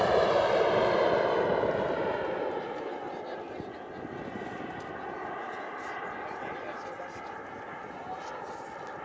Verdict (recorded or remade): recorded